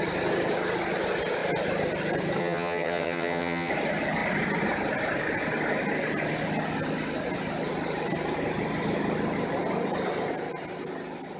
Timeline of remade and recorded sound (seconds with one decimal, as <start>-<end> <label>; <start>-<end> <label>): 0.0-2.4 recorded; 2.4-3.7 remade; 3.7-11.4 recorded